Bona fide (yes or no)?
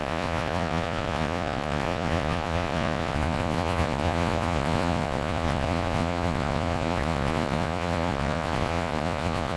no